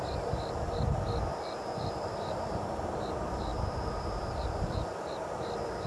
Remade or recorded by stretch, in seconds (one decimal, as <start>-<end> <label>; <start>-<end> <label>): 0.0-5.9 remade